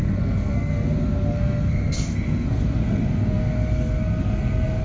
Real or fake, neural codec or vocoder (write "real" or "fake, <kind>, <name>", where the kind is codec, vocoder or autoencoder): fake, codec, SNAC